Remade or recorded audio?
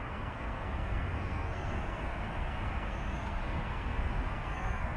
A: remade